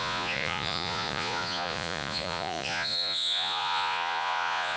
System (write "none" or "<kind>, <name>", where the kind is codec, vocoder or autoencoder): vocoder, Vocos